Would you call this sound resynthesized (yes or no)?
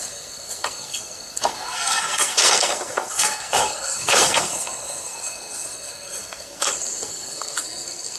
yes